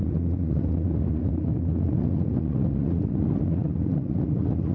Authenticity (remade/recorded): remade